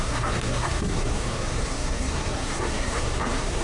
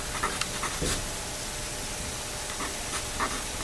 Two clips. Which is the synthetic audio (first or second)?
first